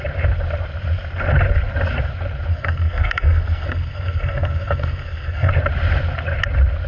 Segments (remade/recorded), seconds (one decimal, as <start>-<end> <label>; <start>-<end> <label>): 0.0-2.5 recorded; 2.5-5.5 remade; 5.5-6.9 recorded

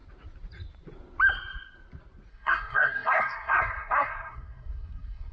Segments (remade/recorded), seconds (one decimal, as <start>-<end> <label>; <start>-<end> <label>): 0.0-2.3 recorded; 2.3-5.3 remade

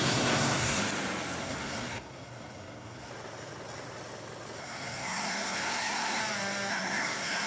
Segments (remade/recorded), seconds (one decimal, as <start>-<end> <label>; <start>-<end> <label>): 0.0-0.8 remade; 0.8-1.4 recorded; 1.4-3.1 remade; 3.1-4.6 recorded; 4.6-6.2 remade; 6.2-6.7 recorded; 6.7-7.5 remade

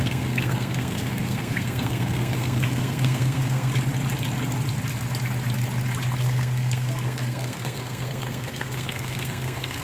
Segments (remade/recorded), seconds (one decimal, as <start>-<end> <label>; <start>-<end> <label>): 0.0-3.7 remade; 3.7-6.2 recorded; 6.2-9.8 remade

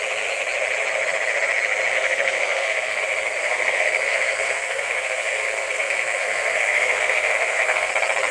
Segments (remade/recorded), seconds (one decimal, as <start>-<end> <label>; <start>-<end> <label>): 0.0-1.9 recorded; 1.9-3.0 remade; 3.0-3.4 recorded; 3.4-7.9 remade; 7.9-8.3 recorded

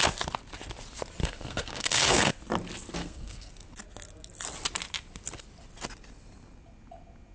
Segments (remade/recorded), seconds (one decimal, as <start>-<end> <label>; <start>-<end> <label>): 0.0-1.2 recorded; 1.2-2.3 remade; 2.3-3.0 recorded; 3.0-3.5 remade; 3.5-7.3 recorded

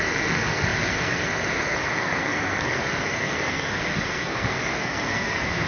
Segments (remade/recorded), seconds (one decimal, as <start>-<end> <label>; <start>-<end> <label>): 0.0-5.7 remade